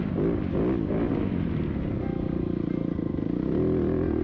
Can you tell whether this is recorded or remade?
recorded